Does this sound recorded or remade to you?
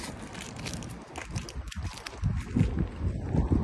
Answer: recorded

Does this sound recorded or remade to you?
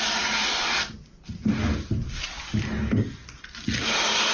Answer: recorded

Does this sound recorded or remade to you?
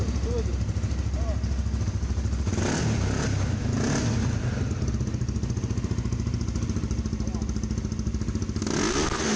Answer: recorded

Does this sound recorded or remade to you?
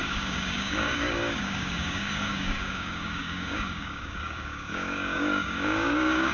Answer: remade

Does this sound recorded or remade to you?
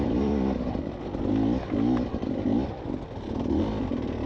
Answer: recorded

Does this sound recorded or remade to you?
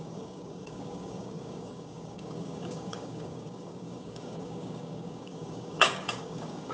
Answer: remade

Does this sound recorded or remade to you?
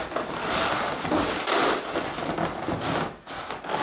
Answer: recorded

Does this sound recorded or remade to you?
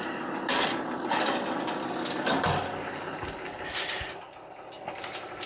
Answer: recorded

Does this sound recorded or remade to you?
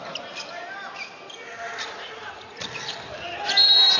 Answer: recorded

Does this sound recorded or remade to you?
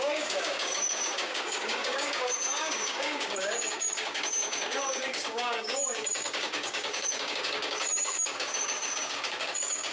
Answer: remade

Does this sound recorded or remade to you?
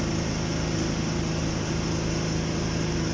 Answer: recorded